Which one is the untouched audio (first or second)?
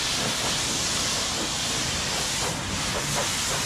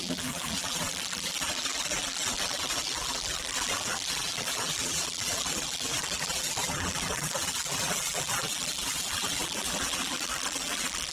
first